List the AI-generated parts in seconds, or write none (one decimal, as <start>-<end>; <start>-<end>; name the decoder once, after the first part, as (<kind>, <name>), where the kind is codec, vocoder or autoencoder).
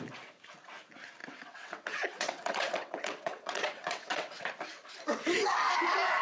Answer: 1.2-4.4 (vocoder, WaveNeXt)